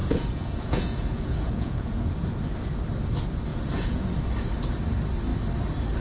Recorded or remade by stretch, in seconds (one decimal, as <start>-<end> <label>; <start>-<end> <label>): 0.0-2.3 remade; 2.3-3.5 recorded; 3.5-4.1 remade; 4.1-6.0 recorded